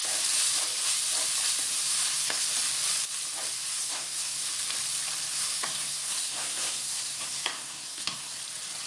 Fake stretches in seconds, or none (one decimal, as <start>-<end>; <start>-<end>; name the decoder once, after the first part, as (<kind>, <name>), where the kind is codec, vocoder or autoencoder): 1.7-2.4 (codec, SNAC); 3.7-4.5; 5.3-8.4

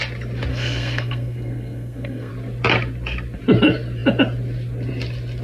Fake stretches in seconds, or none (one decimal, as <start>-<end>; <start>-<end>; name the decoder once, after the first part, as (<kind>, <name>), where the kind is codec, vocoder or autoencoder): 0.5-2.3 (codec, SNAC)